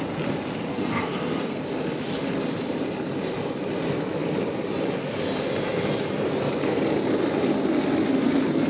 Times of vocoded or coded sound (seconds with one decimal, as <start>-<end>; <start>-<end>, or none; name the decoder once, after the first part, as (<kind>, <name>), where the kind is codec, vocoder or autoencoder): 0.7-1.6 (codec, SNAC)